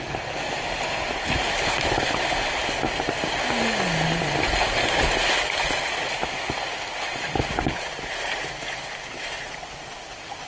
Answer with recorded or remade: recorded